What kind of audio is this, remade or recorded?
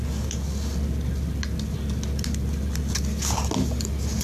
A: recorded